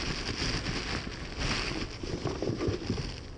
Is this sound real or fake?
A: real